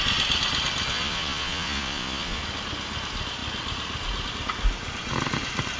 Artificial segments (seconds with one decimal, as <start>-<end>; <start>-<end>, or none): 0.9-2.4